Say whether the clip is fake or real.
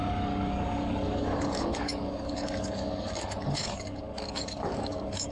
fake